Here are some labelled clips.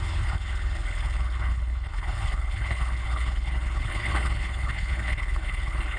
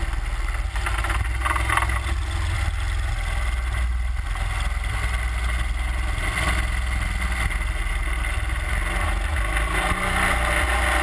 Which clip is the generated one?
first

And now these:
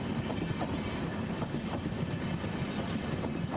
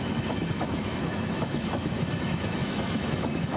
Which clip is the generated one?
second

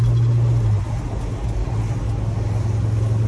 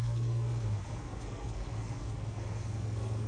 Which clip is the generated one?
second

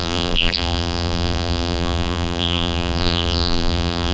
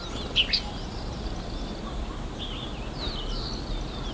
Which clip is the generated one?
first